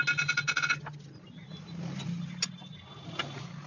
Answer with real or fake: real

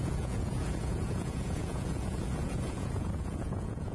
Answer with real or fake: fake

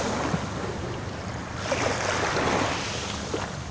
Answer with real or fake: real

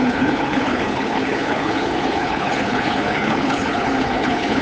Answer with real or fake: fake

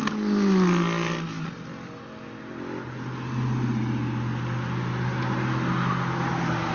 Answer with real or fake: real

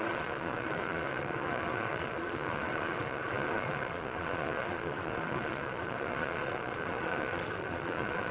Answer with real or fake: fake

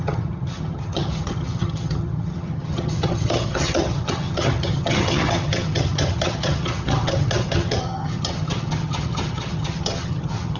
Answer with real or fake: fake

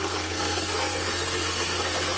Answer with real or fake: fake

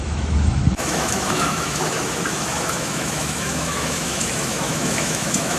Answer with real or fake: fake